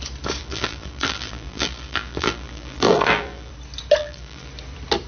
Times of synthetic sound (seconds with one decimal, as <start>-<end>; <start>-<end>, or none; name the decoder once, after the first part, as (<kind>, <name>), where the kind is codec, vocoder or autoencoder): 0.4-3.5 (vocoder, BigVGAN v2); 4.0-4.5